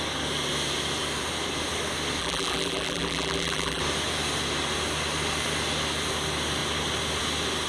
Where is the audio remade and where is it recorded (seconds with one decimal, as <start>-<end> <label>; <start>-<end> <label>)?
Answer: 0.0-2.2 recorded; 2.2-3.8 remade; 3.8-7.7 recorded